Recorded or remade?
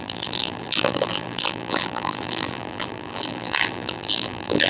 remade